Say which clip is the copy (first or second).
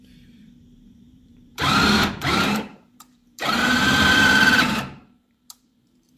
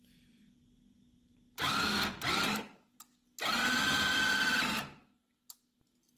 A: first